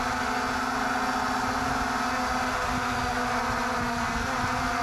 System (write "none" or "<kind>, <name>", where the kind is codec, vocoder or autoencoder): none